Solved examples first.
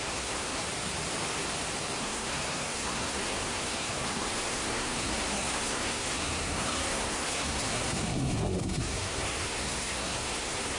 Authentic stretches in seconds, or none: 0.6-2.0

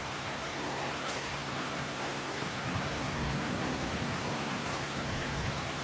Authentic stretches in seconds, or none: none

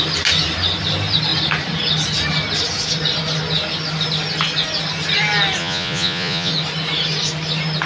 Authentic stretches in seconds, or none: 0.0-5.6; 6.5-7.9